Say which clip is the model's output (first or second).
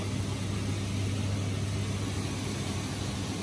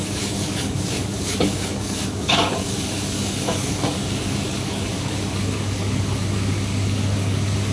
second